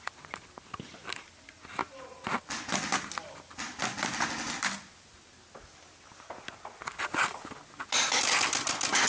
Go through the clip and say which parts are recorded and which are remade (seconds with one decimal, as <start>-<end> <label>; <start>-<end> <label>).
0.0-9.1 recorded